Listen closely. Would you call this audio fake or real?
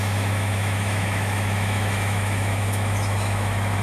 fake